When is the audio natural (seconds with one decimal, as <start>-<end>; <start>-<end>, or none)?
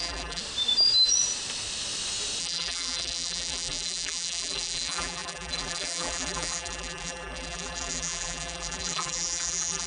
0.4-2.4